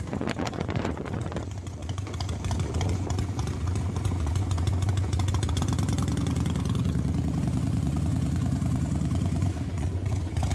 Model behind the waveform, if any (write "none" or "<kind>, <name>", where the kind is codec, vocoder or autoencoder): vocoder, Vocos